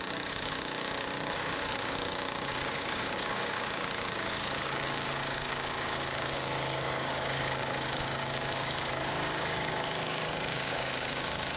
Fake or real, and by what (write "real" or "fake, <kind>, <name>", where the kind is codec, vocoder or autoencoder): fake, codec, DAC